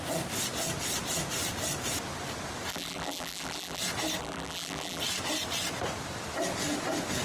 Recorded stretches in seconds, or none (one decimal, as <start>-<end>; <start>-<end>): 0.0-2.7; 3.8-4.2; 5.0-7.2

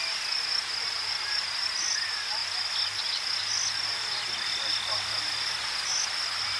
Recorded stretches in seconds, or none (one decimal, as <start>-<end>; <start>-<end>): 0.0-6.6